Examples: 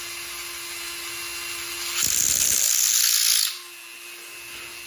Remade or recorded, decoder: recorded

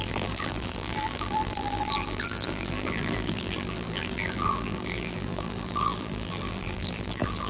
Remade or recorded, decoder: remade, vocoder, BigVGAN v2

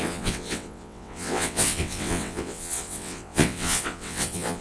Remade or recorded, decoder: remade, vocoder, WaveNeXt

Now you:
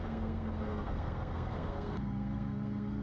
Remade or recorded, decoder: remade, codec, SNAC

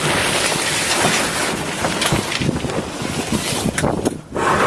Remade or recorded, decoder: recorded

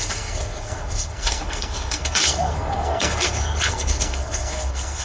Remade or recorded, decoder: remade, codec, SNAC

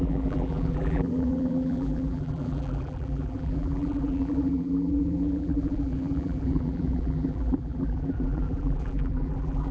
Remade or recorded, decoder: remade, vocoder, BigVGAN v2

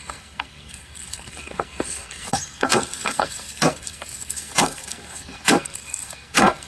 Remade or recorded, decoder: remade, codec, SNAC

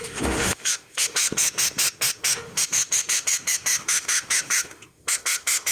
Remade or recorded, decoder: remade, autoencoder, DAC-VAE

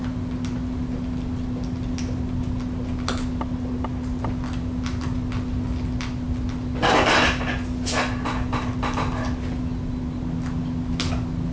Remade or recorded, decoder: recorded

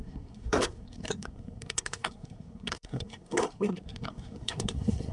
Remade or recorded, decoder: remade, codec, SNAC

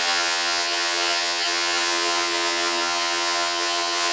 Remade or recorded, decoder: remade, vocoder, HiFi-GAN